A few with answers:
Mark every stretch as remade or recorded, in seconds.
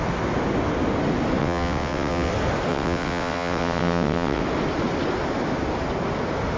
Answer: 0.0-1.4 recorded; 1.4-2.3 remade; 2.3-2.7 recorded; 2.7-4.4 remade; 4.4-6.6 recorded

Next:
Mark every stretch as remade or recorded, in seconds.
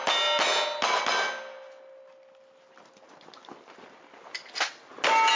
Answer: 0.0-5.4 recorded